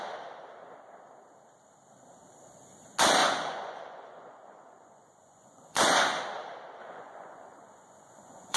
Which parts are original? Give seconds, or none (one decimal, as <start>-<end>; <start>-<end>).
0.0-3.2; 6.2-6.8